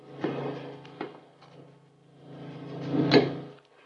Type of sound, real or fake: real